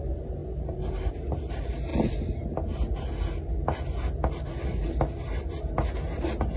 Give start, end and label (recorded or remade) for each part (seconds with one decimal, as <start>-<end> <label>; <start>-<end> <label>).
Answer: 0.0-1.9 recorded; 1.9-3.2 remade; 3.2-6.6 recorded